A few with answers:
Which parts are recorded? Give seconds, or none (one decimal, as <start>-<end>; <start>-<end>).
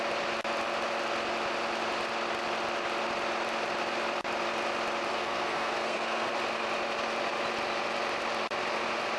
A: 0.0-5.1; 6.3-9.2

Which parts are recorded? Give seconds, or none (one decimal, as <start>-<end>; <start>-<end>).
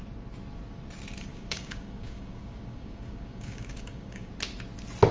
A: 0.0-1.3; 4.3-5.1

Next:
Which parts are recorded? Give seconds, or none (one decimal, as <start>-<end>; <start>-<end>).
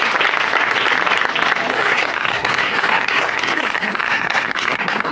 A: 0.0-1.7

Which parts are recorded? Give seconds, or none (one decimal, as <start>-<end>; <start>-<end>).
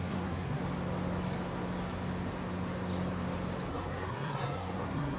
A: 0.6-3.7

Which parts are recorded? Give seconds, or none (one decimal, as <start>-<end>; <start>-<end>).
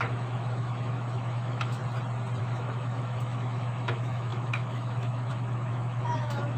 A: 1.8-2.4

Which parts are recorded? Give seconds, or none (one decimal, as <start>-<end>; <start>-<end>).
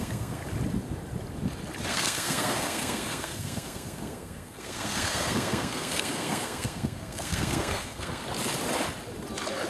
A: 0.4-1.9; 8.2-9.7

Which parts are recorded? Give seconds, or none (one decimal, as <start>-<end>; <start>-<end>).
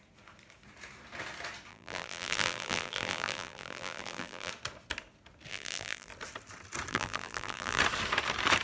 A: 0.0-1.7; 4.5-5.5; 6.1-6.9; 7.8-8.6